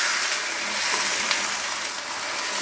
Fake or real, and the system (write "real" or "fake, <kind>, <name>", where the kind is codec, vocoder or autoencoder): real